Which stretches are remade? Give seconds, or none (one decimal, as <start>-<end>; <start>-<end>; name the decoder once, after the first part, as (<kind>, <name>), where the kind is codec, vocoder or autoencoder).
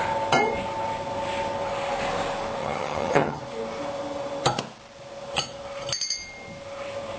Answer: 2.6-3.4 (vocoder, HiFi-GAN)